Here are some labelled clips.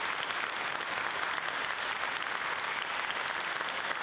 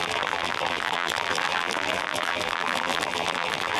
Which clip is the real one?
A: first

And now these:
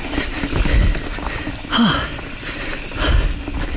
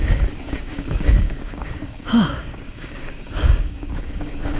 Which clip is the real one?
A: first